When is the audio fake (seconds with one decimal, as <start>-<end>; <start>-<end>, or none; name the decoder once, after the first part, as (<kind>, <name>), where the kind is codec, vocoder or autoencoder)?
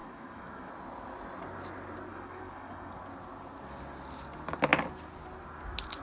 0.0-0.7 (codec, DAC); 2.1-2.9